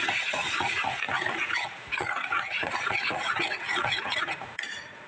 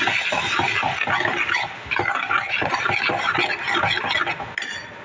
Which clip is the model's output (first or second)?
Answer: first